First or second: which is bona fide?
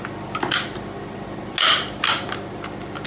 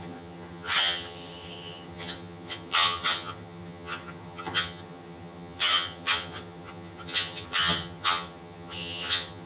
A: first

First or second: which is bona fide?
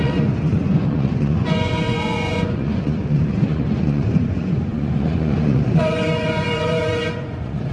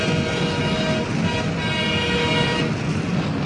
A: second